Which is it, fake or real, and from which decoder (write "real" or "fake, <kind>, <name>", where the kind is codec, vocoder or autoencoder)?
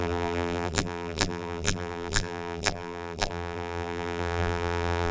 fake, vocoder, BigVGAN v2